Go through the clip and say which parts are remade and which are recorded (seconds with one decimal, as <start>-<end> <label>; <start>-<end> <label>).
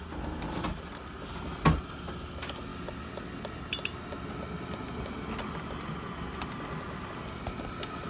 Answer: 0.0-8.1 recorded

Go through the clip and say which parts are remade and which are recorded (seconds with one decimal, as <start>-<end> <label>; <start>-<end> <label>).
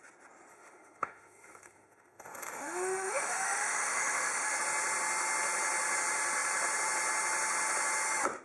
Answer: 0.0-0.5 recorded; 0.5-4.6 remade; 4.6-8.4 recorded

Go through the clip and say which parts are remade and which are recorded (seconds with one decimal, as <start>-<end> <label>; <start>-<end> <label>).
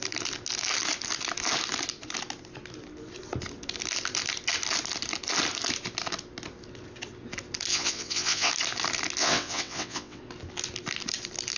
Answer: 0.0-7.7 recorded; 7.7-8.5 remade; 8.5-9.2 recorded; 9.2-10.2 remade; 10.2-11.6 recorded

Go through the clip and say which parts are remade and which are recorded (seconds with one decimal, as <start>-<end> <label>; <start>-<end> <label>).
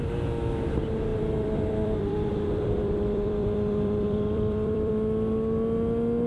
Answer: 0.0-1.1 recorded; 1.1-4.9 remade; 4.9-6.3 recorded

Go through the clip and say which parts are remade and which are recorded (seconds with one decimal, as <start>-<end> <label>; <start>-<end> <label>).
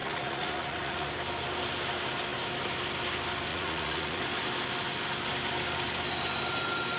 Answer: 0.0-1.1 remade; 1.1-3.5 recorded; 3.5-4.2 remade; 4.2-7.0 recorded